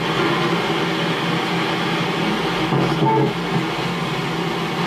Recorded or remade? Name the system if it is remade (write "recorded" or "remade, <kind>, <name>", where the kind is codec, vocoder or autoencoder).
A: recorded